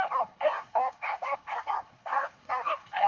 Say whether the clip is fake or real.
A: fake